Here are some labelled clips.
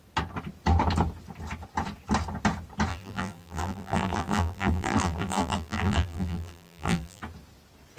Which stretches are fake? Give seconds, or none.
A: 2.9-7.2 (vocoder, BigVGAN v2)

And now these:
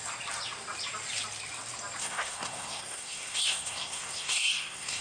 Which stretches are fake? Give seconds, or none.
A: 2.0-5.0 (codec, SNAC)

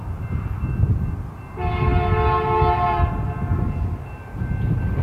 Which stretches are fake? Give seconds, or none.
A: none

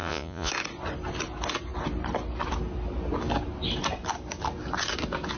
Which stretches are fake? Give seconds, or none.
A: 0.0-0.5 (vocoder, Vocos)

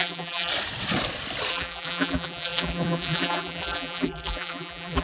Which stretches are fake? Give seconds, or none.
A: 0.0-0.5 (vocoder, BigVGAN v2); 1.5-5.0

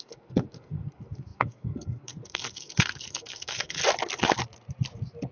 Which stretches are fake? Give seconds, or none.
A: 0.0-3.8 (codec, SNAC)

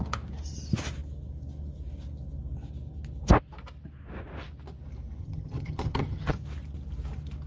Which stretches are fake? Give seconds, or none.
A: 5.2-6.3 (vocoder, HiFi-GAN)

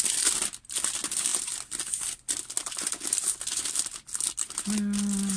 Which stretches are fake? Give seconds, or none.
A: none